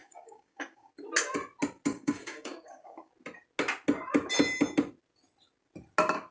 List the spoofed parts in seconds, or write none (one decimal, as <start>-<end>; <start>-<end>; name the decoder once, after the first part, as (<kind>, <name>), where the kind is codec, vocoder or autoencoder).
0.0-0.9 (codec, DAC); 1.9-3.1